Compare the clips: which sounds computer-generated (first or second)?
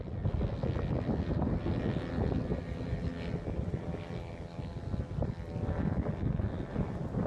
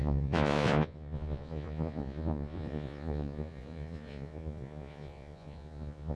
second